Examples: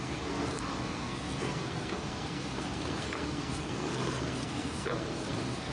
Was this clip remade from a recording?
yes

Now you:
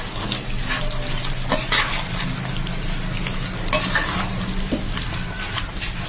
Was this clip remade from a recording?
no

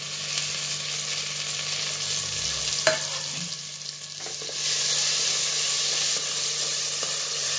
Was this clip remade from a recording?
no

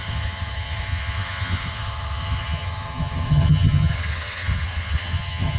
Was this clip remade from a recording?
yes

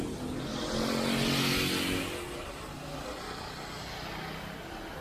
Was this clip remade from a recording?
no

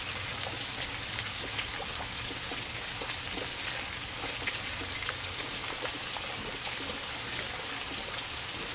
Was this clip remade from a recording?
no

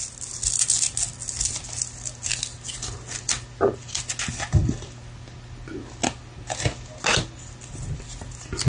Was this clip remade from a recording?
no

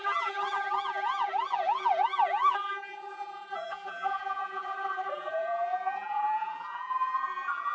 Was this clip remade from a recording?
yes